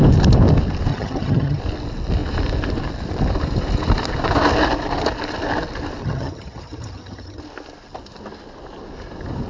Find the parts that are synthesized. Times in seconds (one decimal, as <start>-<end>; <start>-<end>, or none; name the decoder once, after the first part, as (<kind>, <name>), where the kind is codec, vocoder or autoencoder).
0.9-1.6 (vocoder, HiFi-GAN); 6.0-7.4